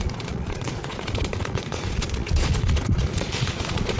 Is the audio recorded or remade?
remade